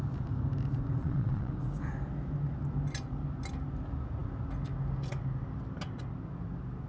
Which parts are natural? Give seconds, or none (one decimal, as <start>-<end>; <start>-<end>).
0.0-1.0; 1.5-6.9